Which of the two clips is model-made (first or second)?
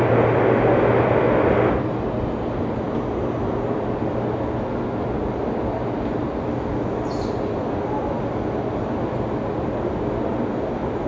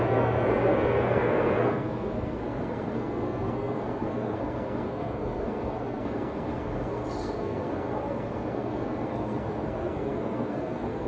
second